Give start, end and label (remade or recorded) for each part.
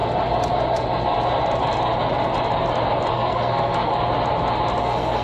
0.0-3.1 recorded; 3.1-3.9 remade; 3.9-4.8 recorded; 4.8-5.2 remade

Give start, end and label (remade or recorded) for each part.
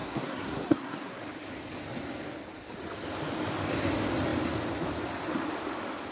0.0-1.2 remade; 1.2-6.1 recorded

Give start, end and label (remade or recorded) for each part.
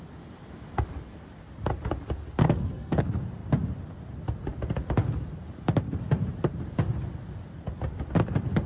0.0-2.4 recorded; 2.4-3.0 remade; 3.0-8.7 recorded